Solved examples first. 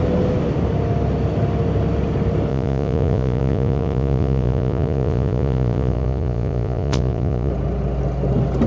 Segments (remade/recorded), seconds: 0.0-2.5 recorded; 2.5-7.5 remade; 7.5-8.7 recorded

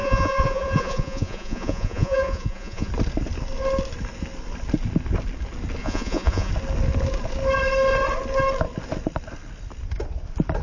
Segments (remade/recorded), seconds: 0.0-2.9 remade; 2.9-5.8 recorded; 5.8-6.5 remade; 6.5-10.6 recorded

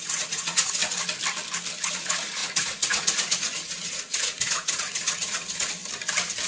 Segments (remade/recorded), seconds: 0.0-0.8 remade; 0.8-1.8 recorded; 1.8-5.8 remade; 5.8-6.5 recorded

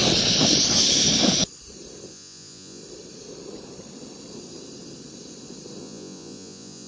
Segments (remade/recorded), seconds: 0.0-2.1 recorded; 2.1-2.8 remade; 2.8-5.8 recorded; 5.8-6.9 remade

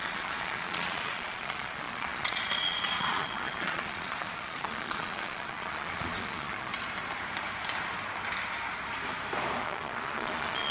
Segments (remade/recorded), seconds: 0.0-6.7 remade; 6.7-9.6 recorded; 9.6-10.7 remade

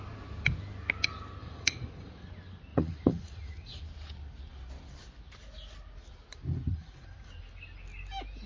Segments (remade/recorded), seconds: 0.0-1.4 recorded; 1.4-2.3 remade; 2.3-2.7 recorded; 2.7-3.8 remade; 3.8-6.7 recorded; 6.7-7.3 remade; 7.3-8.5 recorded